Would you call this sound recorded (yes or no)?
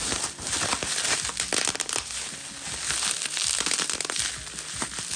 yes